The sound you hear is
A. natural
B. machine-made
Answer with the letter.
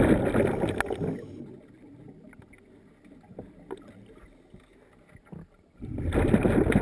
A